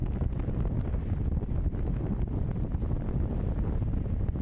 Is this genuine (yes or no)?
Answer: yes